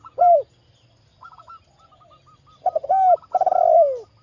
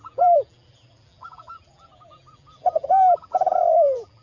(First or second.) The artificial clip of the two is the second